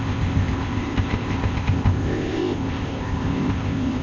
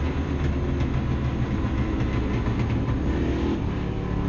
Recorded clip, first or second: second